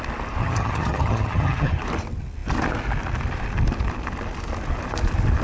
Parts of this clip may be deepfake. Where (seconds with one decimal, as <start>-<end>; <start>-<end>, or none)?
0.4-1.8